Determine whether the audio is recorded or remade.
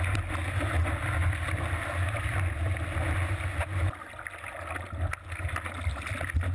recorded